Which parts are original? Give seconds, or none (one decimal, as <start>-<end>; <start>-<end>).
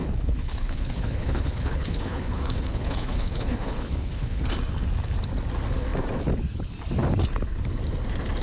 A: 4.5-8.4